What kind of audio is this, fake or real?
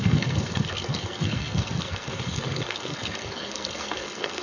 fake